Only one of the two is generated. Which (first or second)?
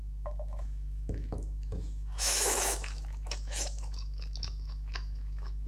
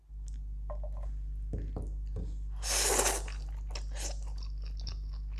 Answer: first